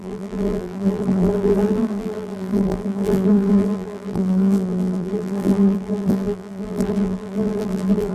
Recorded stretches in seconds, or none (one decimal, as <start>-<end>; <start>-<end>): none